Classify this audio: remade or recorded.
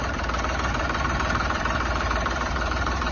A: remade